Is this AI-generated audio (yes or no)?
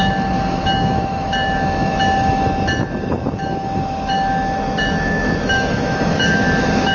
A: yes